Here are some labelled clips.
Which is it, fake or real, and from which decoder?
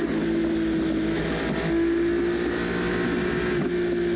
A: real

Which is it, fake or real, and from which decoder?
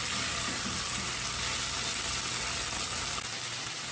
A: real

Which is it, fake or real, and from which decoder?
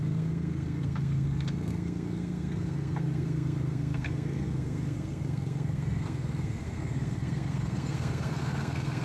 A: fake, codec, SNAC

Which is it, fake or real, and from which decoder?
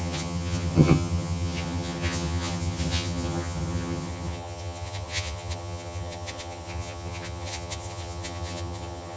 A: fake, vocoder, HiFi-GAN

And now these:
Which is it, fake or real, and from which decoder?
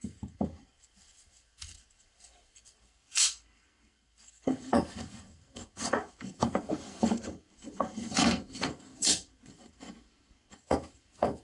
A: fake, codec, SNAC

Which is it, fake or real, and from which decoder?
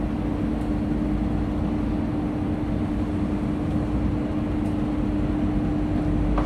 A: real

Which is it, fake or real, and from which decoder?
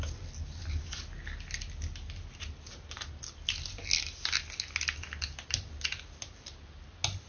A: real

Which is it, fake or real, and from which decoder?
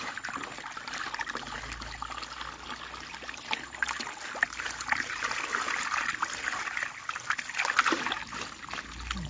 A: real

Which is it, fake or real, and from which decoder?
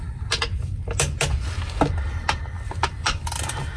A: real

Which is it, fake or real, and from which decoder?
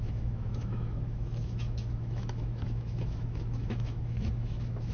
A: fake, autoencoder, DAC-VAE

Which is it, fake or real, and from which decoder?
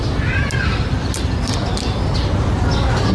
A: real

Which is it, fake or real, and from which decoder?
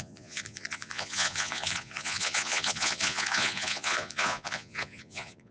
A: fake, vocoder, Vocos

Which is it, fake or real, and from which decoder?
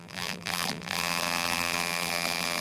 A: fake, vocoder, BigVGAN v2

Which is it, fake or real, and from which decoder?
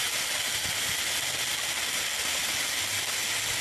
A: real